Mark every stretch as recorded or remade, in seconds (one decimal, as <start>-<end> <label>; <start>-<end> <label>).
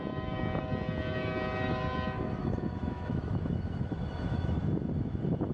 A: 0.0-2.4 recorded; 2.4-4.6 remade; 4.6-5.5 recorded